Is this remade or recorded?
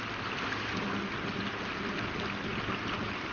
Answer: recorded